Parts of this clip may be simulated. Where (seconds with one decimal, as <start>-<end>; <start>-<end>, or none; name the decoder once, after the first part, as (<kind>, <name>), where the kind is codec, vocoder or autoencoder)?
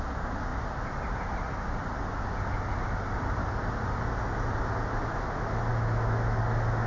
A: 5.7-6.4 (autoencoder, DAC-VAE)